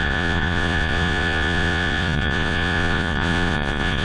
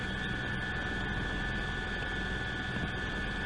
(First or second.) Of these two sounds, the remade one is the first